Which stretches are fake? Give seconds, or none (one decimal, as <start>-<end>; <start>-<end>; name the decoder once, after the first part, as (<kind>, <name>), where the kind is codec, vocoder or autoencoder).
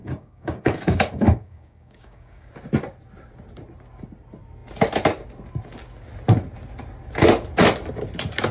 0.0-2.5 (codec, DAC)